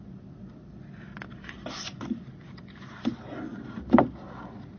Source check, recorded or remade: recorded